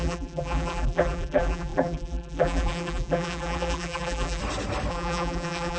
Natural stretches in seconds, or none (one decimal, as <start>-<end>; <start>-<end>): 4.4-4.9